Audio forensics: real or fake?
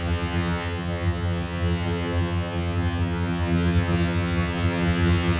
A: fake